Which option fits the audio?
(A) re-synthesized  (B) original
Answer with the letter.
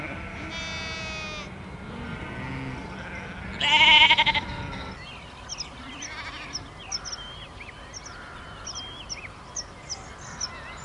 B